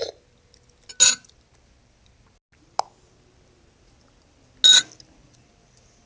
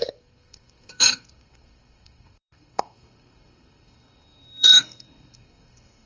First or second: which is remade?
second